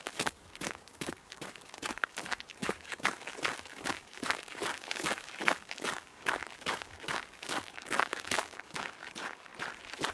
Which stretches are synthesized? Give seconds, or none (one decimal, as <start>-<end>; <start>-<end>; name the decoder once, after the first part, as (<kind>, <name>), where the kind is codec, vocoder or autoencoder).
0.0-9.5 (codec, DAC)